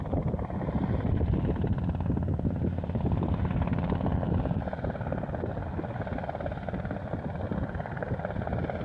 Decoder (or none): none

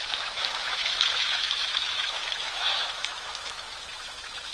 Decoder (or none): autoencoder, DAC-VAE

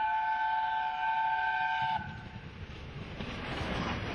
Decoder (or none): none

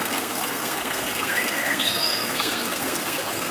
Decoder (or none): codec, SNAC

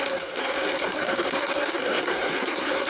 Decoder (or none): codec, SNAC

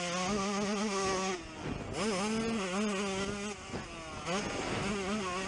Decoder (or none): none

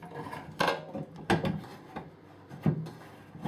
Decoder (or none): none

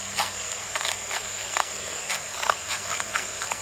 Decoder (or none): codec, SNAC